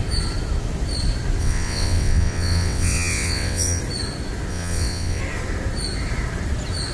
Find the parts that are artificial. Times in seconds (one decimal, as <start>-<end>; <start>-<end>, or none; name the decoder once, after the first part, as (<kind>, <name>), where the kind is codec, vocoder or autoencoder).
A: 1.4-3.8 (vocoder, WaveNeXt); 4.5-5.2